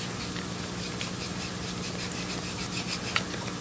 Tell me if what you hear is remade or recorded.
recorded